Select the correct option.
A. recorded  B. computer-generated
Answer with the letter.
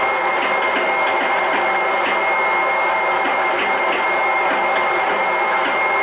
A